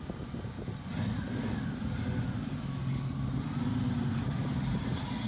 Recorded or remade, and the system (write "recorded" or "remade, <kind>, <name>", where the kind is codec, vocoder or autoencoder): recorded